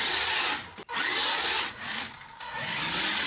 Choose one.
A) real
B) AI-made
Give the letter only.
A